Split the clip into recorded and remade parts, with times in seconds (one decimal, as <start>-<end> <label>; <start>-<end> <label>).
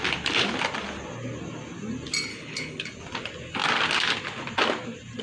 0.0-2.3 recorded; 2.3-2.9 remade; 2.9-5.2 recorded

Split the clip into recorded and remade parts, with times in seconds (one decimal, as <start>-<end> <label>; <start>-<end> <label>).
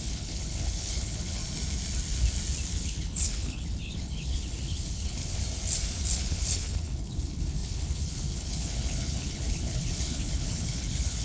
0.0-1.4 remade; 1.4-2.7 recorded; 2.7-5.4 remade; 5.4-6.2 recorded; 6.2-11.2 remade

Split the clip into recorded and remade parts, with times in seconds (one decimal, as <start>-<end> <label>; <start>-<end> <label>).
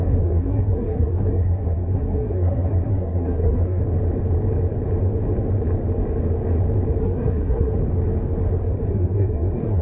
0.0-3.8 remade; 3.8-7.0 recorded; 7.0-7.7 remade; 7.7-8.9 recorded; 8.9-9.8 remade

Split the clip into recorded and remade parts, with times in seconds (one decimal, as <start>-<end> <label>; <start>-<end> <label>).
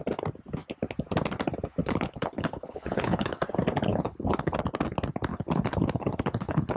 0.0-1.8 recorded; 1.8-3.4 remade; 3.4-3.9 recorded; 3.9-4.6 remade; 4.6-5.3 recorded; 5.3-6.8 remade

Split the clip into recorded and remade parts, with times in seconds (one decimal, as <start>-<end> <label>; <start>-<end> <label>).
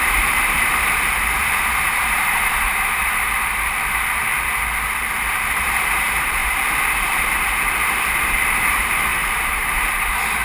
0.0-4.3 remade; 4.3-5.3 recorded; 5.3-6.4 remade; 6.4-8.2 recorded; 8.2-10.4 remade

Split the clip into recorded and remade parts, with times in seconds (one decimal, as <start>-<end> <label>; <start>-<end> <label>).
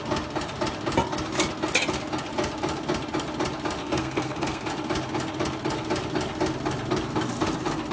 0.0-3.8 recorded; 3.8-4.7 remade; 4.7-7.9 recorded